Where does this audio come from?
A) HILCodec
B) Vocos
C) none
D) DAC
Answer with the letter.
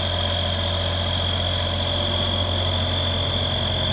C